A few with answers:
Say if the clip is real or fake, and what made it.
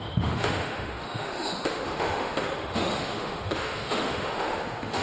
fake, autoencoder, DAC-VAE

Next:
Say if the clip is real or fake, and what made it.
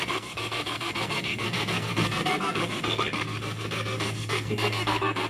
fake, codec, SNAC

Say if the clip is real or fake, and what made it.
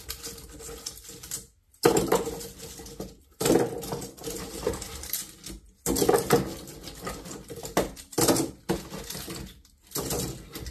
real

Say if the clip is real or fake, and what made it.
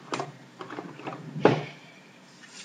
fake, vocoder, BigVGAN v2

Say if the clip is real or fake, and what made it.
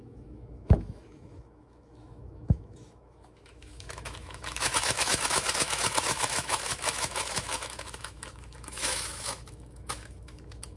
fake, autoencoder, DAC-VAE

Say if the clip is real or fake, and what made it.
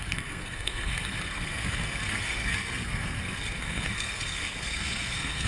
fake, codec, SNAC